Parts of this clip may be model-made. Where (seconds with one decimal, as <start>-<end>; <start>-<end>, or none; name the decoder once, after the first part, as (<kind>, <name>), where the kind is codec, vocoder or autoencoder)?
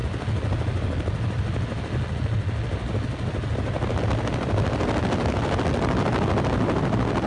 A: none